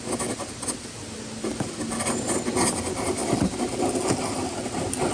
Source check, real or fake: real